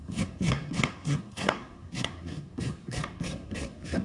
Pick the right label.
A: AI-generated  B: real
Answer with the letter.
A